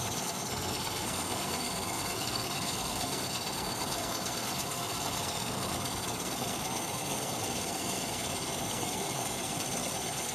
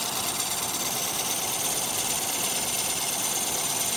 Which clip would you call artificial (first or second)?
first